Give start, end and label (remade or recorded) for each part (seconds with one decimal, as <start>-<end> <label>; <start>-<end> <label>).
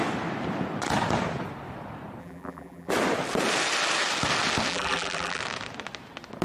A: 0.0-2.2 recorded; 2.2-2.9 remade; 2.9-4.7 recorded; 4.7-5.4 remade; 5.4-6.4 recorded